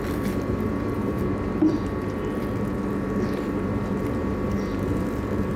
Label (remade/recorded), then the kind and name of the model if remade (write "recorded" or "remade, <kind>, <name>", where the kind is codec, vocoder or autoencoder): remade, vocoder, BigVGAN v2